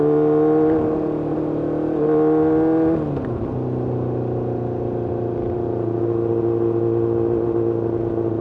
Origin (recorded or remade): recorded